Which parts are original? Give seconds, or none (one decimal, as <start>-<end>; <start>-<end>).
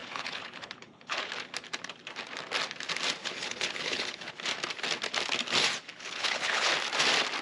1.3-3.2; 4.3-5.9; 6.7-7.4